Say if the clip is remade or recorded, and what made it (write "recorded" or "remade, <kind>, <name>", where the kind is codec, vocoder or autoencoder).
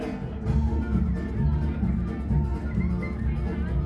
recorded